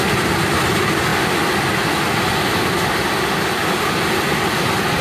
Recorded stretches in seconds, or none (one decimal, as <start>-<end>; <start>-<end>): 0.0-5.0